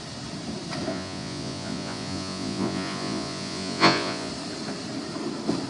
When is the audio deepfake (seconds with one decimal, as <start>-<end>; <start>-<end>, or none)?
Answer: 0.9-4.3